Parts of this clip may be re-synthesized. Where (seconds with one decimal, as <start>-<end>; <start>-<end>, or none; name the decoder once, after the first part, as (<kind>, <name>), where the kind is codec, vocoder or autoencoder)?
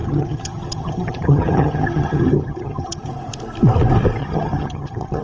0.0-3.1 (vocoder, HiFi-GAN); 4.2-5.2